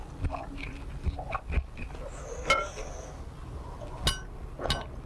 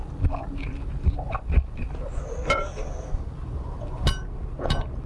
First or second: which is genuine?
first